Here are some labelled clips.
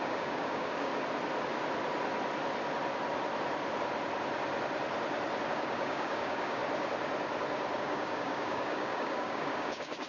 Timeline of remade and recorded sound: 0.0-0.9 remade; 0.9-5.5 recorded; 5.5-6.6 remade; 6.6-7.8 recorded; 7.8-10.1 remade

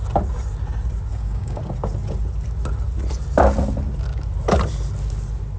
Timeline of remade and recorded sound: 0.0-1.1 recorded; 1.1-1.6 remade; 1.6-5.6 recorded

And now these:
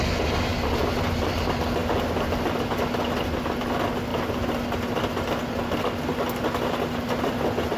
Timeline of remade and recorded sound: 0.0-7.8 recorded

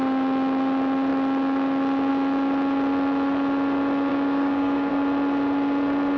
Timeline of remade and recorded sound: 0.0-4.1 recorded; 4.1-4.9 remade; 4.9-6.2 recorded

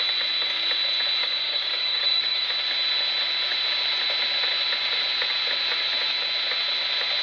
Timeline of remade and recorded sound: 0.0-1.2 recorded; 1.2-2.5 remade; 2.5-7.2 recorded